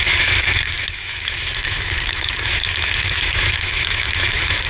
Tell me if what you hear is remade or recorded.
remade